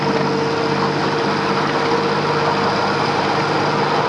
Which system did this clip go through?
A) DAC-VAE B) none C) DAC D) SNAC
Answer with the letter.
B